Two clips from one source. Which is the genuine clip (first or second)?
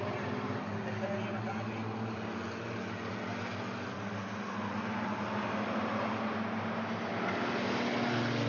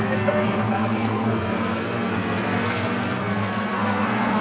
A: first